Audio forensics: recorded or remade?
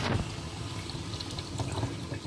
recorded